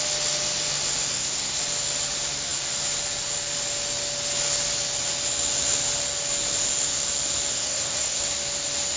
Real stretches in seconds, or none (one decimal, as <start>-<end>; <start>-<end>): 0.0-1.1; 1.6-7.5; 8.2-9.0